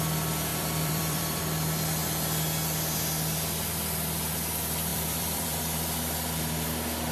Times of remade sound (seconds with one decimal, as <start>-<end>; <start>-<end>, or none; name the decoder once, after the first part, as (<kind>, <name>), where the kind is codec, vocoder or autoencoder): 0.5-1.4 (vocoder, BigVGAN v2); 4.9-5.6